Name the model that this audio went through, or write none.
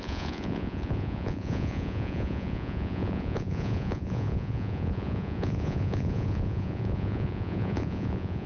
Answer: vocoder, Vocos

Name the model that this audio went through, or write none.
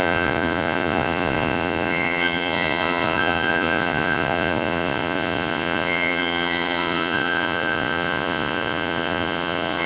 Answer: vocoder, Vocos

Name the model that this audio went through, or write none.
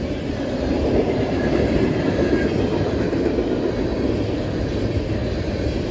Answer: none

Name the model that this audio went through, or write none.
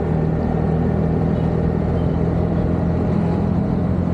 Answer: none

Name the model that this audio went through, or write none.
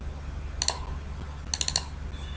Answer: none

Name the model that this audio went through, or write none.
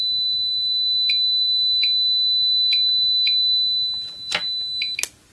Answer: none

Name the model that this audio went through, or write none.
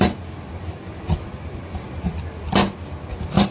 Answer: none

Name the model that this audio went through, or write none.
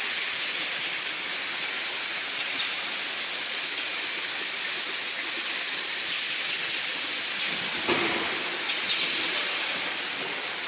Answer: none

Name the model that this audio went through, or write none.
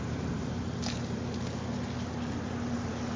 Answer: none